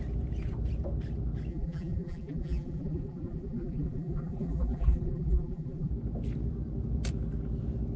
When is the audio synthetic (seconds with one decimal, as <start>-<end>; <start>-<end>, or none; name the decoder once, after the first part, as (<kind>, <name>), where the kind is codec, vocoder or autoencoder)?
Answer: 1.5-5.9 (vocoder, BigVGAN v2)